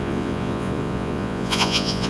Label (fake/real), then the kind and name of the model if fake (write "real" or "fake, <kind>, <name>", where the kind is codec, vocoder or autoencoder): fake, vocoder, Vocos